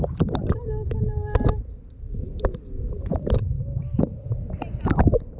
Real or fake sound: real